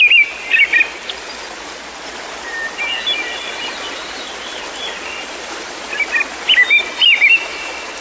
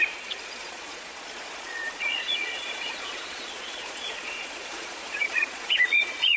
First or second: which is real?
first